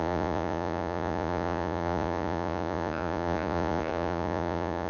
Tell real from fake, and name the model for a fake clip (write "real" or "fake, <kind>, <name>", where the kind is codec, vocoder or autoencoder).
fake, vocoder, Vocos